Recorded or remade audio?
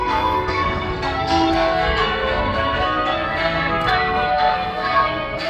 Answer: remade